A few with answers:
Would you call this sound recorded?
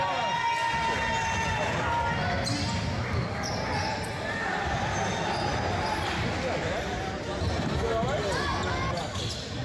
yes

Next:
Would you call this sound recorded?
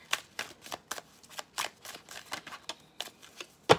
yes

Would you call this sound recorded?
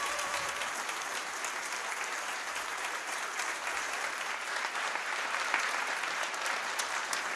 no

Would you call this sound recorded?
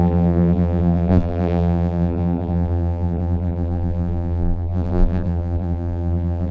no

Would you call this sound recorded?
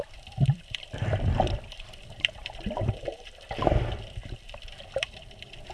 no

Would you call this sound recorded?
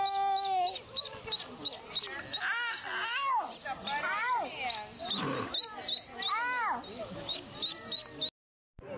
yes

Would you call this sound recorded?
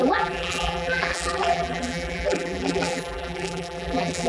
no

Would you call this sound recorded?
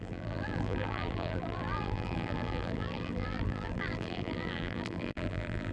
no